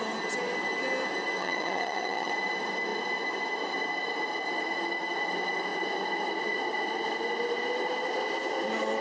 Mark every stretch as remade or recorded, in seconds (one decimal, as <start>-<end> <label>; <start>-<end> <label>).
0.0-1.4 recorded; 1.4-2.3 remade; 2.3-9.0 recorded